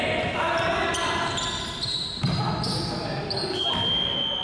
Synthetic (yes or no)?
no